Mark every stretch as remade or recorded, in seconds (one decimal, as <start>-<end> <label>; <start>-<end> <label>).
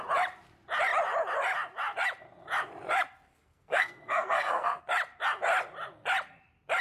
0.0-3.3 recorded; 3.3-4.8 remade; 4.8-6.8 recorded